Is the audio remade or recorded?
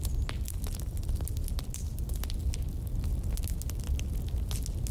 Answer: recorded